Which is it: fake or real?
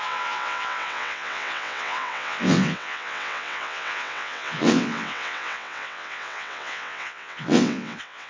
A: fake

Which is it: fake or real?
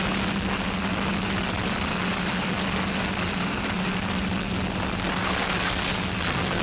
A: real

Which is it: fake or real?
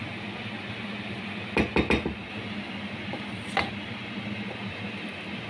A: real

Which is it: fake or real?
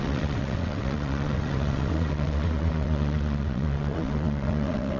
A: fake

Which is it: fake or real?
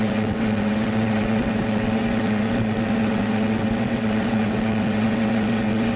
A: fake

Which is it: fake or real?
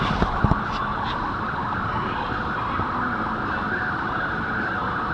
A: real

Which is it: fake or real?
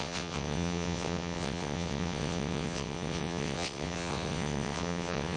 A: fake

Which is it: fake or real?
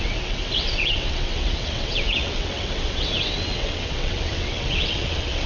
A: fake